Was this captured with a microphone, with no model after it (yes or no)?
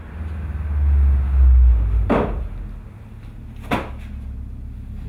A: yes